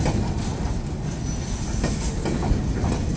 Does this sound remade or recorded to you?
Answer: recorded